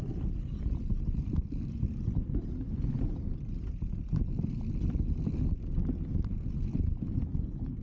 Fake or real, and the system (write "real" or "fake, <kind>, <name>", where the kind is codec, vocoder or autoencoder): real